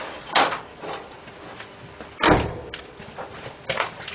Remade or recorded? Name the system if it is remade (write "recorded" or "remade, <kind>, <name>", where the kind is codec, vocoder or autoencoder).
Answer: recorded